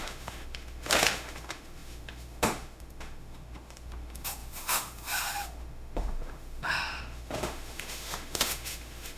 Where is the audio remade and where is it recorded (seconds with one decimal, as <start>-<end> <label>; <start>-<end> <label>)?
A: 0.0-9.2 remade